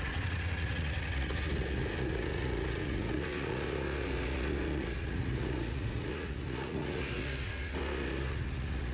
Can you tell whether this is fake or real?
fake